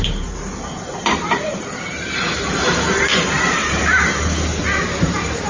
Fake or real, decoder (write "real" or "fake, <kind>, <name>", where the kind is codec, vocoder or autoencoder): fake, vocoder, BigVGAN v2